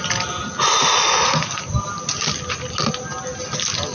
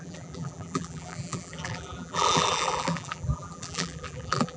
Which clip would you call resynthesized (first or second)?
second